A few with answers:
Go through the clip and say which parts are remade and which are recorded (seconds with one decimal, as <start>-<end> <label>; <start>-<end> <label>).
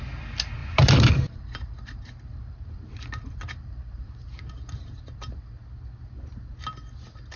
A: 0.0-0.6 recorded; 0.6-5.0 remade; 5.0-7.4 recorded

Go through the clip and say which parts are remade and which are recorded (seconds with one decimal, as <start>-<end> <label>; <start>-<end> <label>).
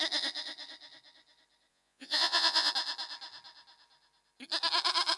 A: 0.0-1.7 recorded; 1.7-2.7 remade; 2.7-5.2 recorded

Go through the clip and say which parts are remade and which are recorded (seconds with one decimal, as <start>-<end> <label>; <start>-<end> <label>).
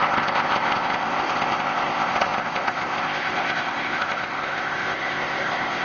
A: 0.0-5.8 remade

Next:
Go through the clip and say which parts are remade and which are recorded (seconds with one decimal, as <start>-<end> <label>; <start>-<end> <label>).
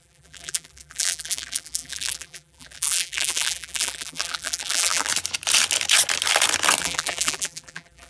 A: 0.0-5.1 remade; 5.1-6.8 recorded; 6.8-8.1 remade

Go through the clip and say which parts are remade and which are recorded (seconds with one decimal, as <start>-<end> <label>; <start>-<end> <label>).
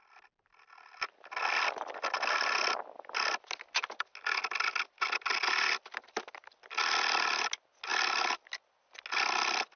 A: 0.0-9.8 recorded